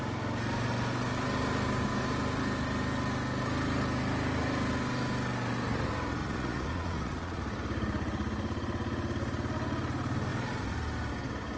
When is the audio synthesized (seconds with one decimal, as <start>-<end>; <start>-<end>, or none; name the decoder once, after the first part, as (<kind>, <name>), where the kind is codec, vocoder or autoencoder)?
6.2-7.4 (vocoder, Vocos)